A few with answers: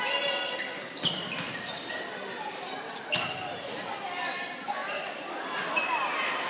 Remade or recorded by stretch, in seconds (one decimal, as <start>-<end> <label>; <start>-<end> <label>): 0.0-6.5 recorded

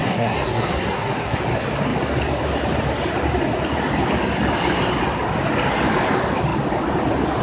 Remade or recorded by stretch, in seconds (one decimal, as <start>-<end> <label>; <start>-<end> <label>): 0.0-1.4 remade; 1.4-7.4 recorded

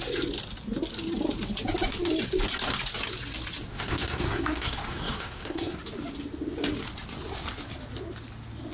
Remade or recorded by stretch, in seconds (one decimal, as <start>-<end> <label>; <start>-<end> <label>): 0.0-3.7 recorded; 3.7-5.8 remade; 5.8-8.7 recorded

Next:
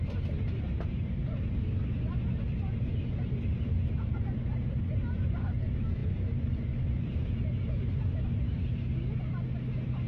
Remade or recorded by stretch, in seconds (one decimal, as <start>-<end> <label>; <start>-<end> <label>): 0.0-10.1 recorded

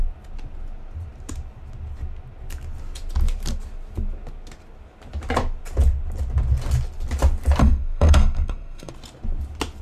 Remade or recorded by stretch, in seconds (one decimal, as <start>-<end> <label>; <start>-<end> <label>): 0.0-7.6 recorded; 7.6-8.9 remade; 8.9-9.8 recorded